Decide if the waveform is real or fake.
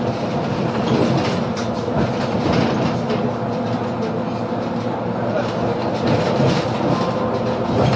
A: real